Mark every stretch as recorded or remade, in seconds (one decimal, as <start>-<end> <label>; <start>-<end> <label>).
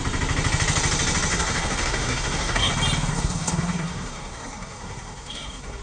0.0-1.3 recorded; 1.3-2.7 remade; 2.7-3.1 recorded; 3.1-5.8 remade